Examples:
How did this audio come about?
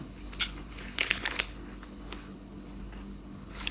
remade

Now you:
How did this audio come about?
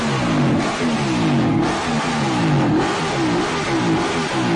recorded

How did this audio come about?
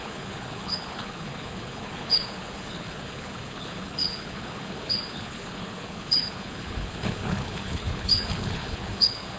remade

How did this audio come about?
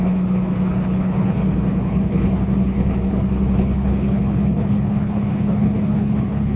remade